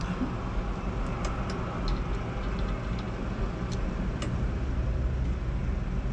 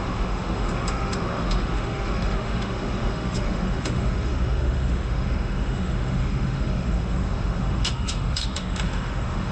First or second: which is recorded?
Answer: first